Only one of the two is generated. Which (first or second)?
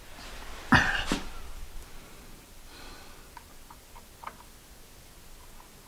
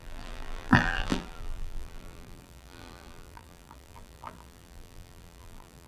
second